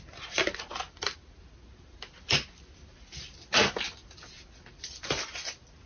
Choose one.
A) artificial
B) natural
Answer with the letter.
B